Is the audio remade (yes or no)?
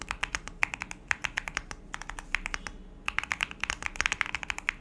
no